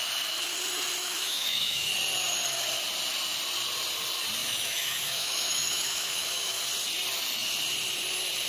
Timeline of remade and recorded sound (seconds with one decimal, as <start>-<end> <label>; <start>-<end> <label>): 0.0-1.0 recorded; 1.0-1.9 remade; 1.9-4.4 recorded; 4.4-6.6 remade; 6.6-8.5 recorded